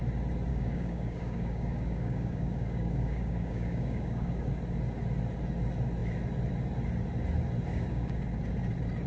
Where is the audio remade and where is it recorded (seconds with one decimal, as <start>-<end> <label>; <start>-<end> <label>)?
0.0-0.5 recorded; 0.5-4.5 remade; 4.5-7.7 recorded; 7.7-8.4 remade; 8.4-9.1 recorded